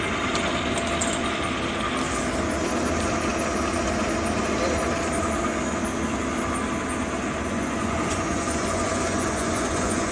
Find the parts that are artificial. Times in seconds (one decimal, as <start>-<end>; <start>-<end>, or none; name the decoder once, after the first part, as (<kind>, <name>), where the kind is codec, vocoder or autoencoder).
7.5-10.1 (vocoder, Vocos)